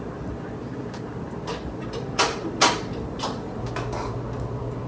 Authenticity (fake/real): real